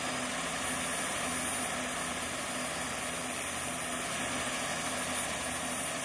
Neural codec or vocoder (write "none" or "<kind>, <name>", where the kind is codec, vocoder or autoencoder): none